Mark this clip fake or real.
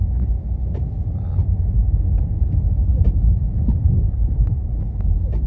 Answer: real